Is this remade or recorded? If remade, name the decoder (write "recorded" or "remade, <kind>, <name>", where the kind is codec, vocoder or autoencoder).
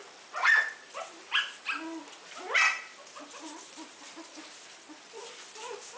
recorded